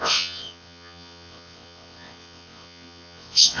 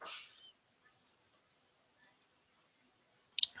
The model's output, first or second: first